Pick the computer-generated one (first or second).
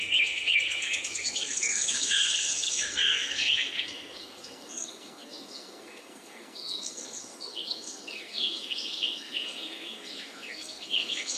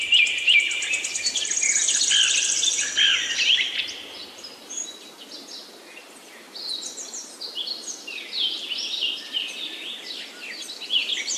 first